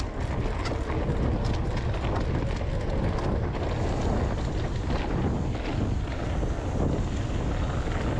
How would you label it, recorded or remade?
recorded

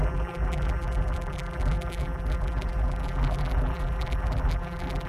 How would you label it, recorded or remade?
remade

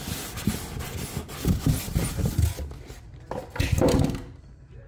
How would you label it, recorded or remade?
remade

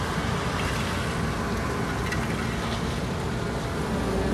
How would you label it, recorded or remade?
recorded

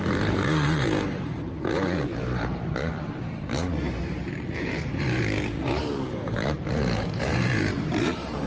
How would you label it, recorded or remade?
remade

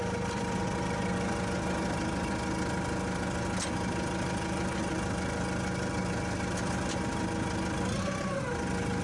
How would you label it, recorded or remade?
recorded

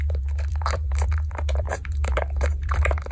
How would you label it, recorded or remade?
remade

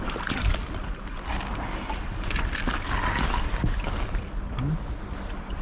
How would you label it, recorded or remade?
recorded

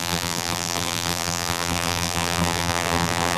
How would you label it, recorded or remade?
remade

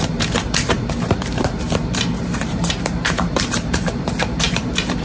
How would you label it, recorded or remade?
remade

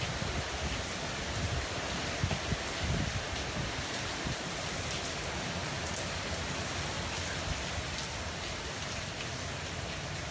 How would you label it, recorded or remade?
recorded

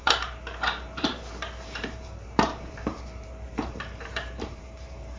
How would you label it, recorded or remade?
remade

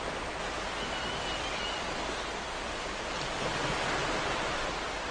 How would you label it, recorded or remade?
remade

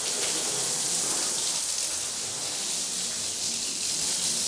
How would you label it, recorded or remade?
recorded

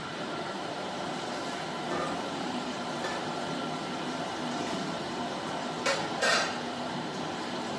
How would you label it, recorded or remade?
remade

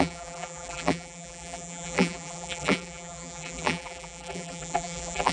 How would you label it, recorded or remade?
remade